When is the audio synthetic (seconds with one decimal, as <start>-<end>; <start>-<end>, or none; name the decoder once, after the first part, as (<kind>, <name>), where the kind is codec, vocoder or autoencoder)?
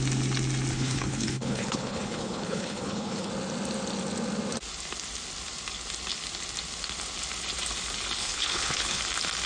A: 0.7-3.3 (codec, HILCodec); 8.2-9.0